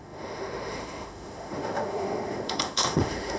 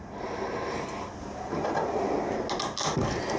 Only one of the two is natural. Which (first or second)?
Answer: second